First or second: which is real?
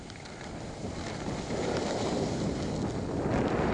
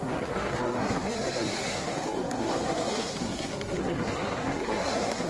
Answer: first